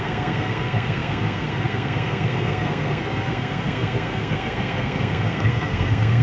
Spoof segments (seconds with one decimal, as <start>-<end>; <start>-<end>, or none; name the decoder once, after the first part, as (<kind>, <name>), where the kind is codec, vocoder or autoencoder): 0.0-6.2 (codec, SNAC)